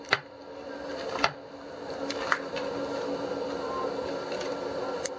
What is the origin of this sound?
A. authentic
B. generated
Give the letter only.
A